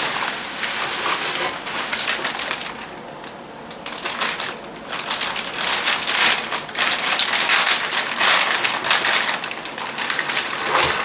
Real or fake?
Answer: real